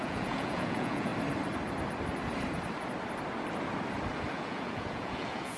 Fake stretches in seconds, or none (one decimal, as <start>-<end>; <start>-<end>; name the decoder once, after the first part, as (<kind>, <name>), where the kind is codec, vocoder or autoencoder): 0.0-1.1 (vocoder, Vocos); 4.3-5.6